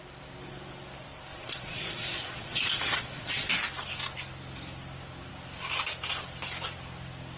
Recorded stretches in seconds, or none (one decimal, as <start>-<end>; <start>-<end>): 0.0-1.3; 3.5-7.4